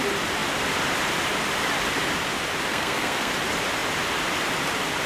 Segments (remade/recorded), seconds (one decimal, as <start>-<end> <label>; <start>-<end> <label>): 0.0-2.7 recorded; 2.7-3.3 remade; 3.3-5.1 recorded